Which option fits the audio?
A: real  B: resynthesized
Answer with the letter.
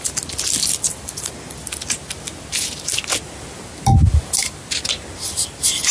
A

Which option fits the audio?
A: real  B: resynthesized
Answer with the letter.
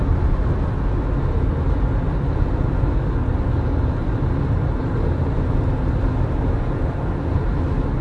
A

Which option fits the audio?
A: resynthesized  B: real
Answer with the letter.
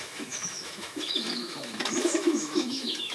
A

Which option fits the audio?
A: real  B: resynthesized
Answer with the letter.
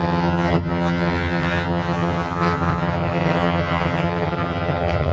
B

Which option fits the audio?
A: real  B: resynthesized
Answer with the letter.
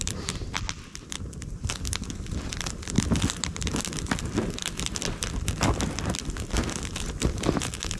A